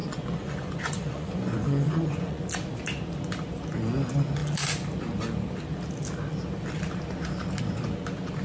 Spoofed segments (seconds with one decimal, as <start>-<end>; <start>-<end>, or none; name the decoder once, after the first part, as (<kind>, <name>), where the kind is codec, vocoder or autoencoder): 0.0-2.4 (vocoder, Vocos)